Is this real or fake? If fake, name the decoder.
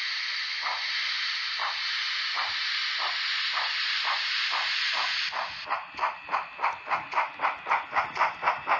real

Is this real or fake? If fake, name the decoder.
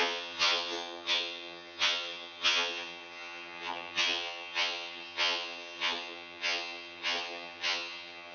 fake, vocoder, HiFi-GAN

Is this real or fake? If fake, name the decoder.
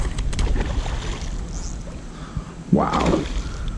real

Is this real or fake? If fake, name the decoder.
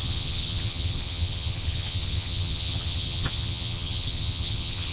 fake, vocoder, HiFi-GAN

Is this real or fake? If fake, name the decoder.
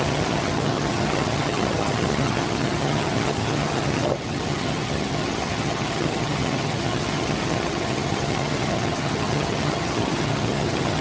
fake, vocoder, HiFi-GAN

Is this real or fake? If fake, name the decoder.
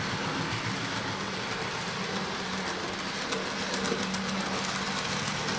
real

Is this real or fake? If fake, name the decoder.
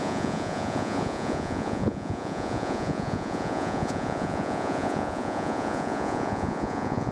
fake, vocoder, Vocos